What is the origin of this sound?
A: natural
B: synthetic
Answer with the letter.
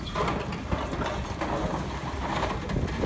A